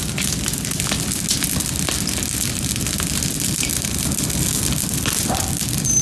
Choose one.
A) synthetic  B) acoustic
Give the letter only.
B